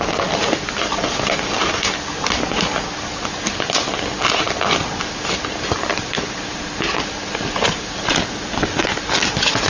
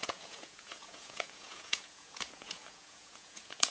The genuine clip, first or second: first